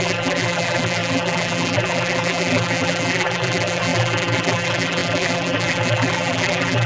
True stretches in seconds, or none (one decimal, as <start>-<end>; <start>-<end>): none